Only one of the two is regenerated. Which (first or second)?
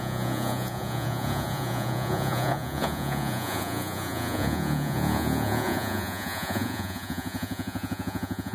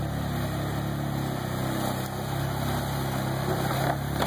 first